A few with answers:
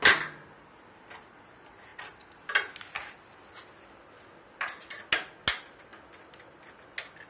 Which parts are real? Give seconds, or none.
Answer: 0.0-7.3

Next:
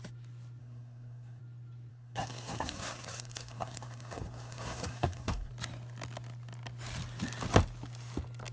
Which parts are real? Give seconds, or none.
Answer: 0.0-0.6; 1.4-1.9; 5.5-8.5

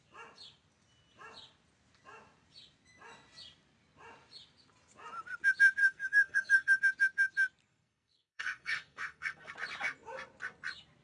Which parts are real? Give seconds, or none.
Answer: 0.0-5.8; 6.8-7.7; 9.5-11.0

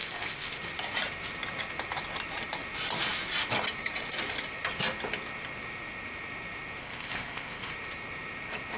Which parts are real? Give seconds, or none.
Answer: 0.6-6.8; 7.7-8.8

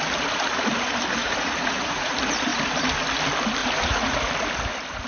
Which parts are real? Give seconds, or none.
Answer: 0.0-1.2; 2.1-3.6; 4.2-5.1